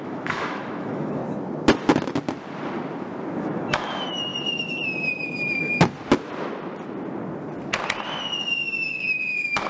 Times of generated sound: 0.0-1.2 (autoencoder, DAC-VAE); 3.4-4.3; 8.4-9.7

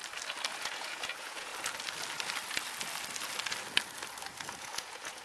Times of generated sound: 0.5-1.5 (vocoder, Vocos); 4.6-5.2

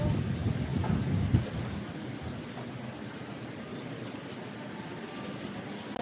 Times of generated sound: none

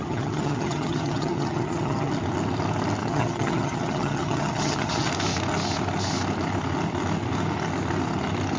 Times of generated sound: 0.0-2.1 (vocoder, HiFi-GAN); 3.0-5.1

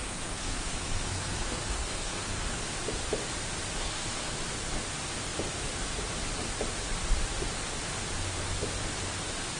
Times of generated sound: 0.0-2.6 (codec, SNAC); 3.8-4.3

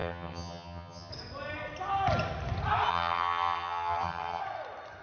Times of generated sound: 0.0-1.1 (vocoder, HiFi-GAN); 2.9-4.4

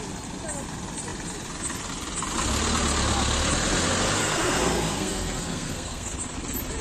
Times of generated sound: 4.2-6.1 (codec, SNAC)